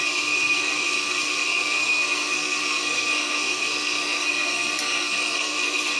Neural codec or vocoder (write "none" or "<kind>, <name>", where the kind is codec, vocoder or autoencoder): codec, SNAC